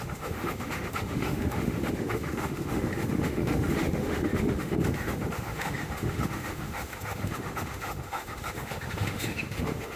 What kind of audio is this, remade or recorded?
remade